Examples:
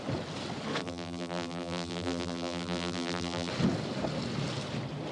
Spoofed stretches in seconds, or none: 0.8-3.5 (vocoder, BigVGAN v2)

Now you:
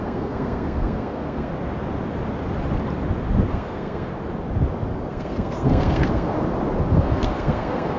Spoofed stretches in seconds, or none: 0.0-1.5 (codec, SNAC); 3.5-4.1; 5.1-6.3; 6.9-8.0

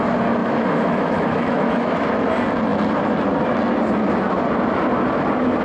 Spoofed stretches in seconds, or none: 0.4-2.1 (autoencoder, DAC-VAE)

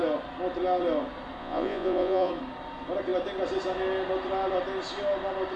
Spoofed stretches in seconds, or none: 1.4-2.3 (vocoder, Vocos)

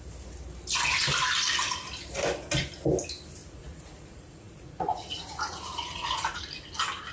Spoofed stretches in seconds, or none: 3.4-6.4 (vocoder, Vocos)

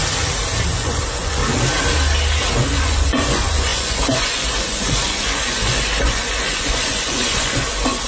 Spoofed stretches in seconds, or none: 0.7-1.4 (vocoder, Vocos); 2.7-8.1